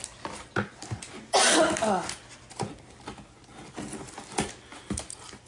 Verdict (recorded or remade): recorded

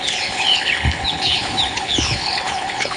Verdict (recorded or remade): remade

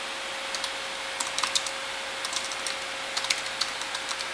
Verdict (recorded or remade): recorded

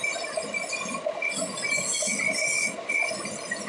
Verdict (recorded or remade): recorded